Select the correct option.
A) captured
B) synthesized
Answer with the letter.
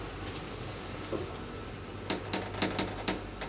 A